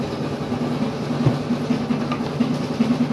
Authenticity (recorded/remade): recorded